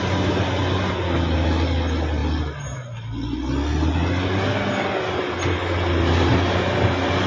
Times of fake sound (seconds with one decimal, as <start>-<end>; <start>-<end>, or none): none